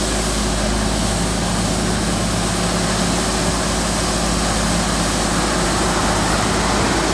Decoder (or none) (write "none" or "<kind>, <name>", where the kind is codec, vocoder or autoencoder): none